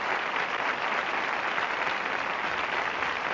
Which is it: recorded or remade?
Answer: remade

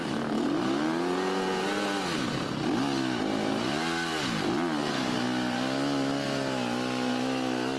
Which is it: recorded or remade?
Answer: recorded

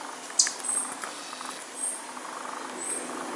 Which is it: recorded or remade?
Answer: recorded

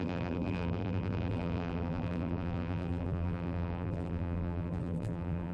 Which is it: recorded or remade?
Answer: remade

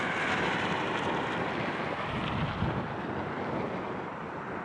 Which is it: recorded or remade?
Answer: remade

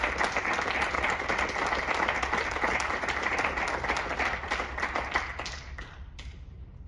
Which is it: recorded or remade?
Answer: recorded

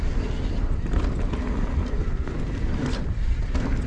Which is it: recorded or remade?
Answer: recorded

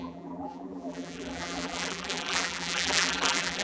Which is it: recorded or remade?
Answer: remade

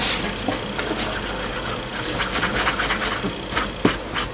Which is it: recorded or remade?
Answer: recorded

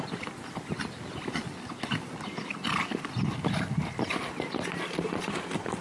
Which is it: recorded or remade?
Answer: remade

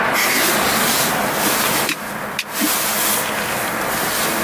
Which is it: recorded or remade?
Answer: recorded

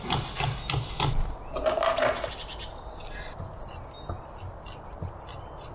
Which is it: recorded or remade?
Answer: recorded